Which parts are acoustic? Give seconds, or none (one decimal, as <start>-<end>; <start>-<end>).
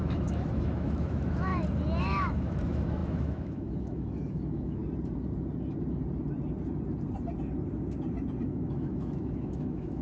1.5-2.0; 4.8-8.4